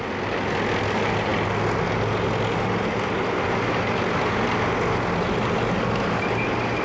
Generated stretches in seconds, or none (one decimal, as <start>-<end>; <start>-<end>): none

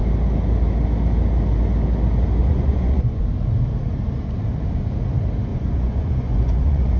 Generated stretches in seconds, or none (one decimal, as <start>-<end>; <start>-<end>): 2.4-3.2; 5.5-7.0

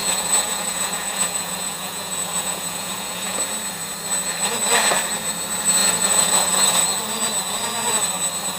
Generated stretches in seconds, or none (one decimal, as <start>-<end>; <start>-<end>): 0.0-3.4; 5.8-6.8

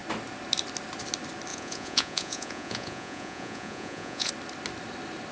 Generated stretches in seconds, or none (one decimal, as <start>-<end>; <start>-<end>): 1.5-4.3

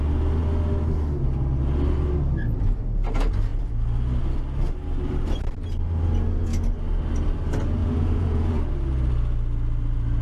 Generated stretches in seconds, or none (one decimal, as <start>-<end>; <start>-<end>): 7.8-8.6

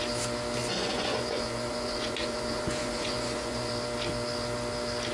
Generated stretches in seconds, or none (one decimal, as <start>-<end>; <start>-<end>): 0.6-3.7

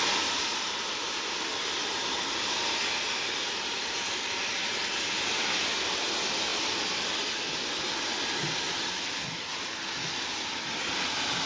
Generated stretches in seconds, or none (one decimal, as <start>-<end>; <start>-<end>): none